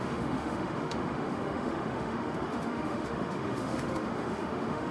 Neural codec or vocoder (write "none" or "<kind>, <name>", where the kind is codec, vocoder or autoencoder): autoencoder, DAC-VAE